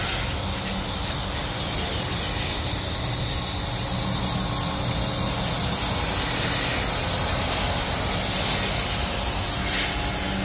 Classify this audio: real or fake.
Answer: real